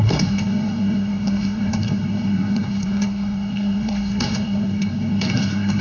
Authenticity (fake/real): fake